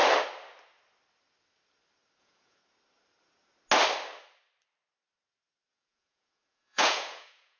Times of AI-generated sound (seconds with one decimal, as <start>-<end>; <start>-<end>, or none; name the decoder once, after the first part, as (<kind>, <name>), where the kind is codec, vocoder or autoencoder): 2.2-2.6 (vocoder, Vocos); 5.7-7.6